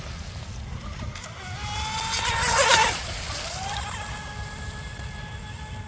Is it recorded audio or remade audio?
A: recorded